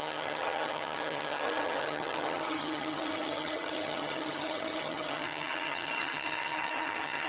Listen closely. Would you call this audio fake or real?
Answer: fake